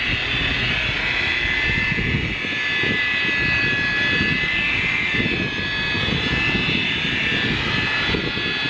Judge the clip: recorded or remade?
recorded